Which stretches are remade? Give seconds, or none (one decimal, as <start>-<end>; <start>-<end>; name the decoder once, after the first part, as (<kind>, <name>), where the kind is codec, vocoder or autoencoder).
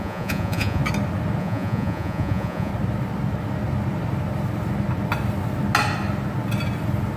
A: 0.0-0.8 (vocoder, Vocos); 1.4-2.7